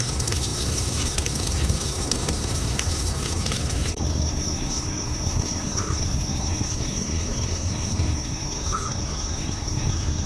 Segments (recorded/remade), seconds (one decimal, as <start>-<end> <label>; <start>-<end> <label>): 0.0-10.3 remade